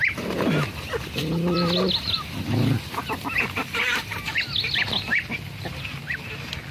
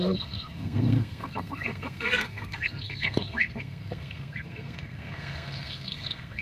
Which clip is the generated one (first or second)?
second